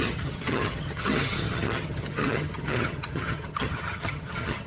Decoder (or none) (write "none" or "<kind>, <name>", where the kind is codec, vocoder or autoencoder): vocoder, HiFi-GAN